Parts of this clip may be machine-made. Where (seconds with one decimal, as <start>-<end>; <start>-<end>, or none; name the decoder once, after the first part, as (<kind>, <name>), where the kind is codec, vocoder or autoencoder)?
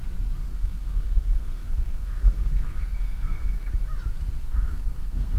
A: 0.5-3.7 (codec, SNAC); 4.4-5.4